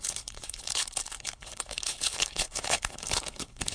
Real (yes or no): no